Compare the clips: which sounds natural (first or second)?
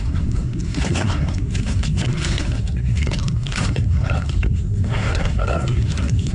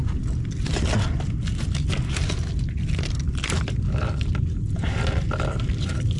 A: second